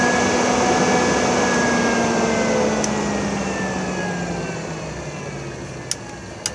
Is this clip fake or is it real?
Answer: real